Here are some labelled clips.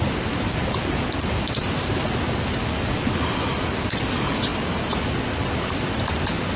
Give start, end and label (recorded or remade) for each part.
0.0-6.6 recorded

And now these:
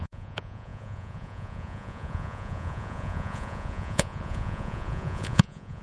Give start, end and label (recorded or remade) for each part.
0.0-5.8 remade

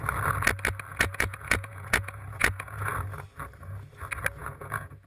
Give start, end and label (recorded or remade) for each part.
0.0-0.9 recorded; 0.9-2.9 remade; 2.9-4.4 recorded; 4.4-5.1 remade

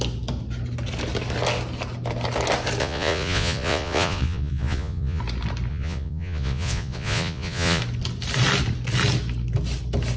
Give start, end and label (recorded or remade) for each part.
0.0-2.8 recorded; 2.8-5.2 remade; 5.2-5.7 recorded; 5.7-7.8 remade; 7.8-10.2 recorded

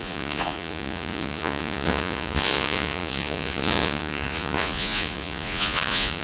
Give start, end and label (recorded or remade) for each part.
0.0-6.2 remade

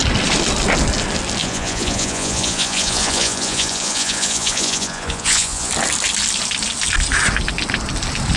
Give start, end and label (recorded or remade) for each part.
0.0-1.4 recorded; 1.4-5.7 remade; 5.7-8.4 recorded